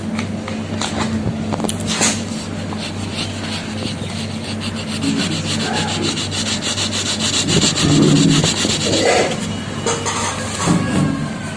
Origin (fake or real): real